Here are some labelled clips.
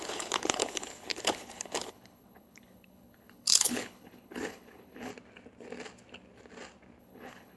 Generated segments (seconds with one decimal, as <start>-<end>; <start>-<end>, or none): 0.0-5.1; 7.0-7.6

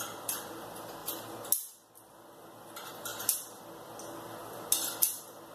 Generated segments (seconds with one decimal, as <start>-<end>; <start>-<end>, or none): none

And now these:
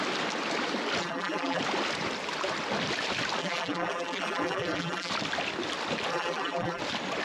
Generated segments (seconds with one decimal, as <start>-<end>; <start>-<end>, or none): 1.0-1.6; 3.4-5.1; 6.1-6.8